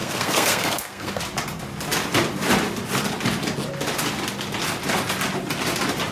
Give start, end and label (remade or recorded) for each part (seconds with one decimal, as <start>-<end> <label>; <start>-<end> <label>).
0.0-1.2 remade; 1.2-6.1 recorded